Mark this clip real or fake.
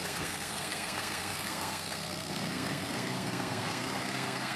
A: fake